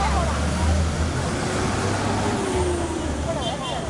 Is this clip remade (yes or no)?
no